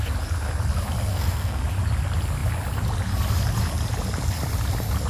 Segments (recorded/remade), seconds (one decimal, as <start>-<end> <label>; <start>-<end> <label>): 0.0-1.1 recorded; 1.1-1.6 remade; 1.6-5.1 recorded